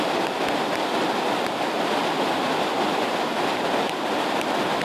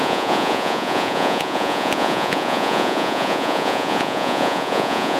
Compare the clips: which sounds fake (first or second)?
second